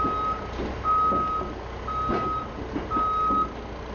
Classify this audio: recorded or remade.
recorded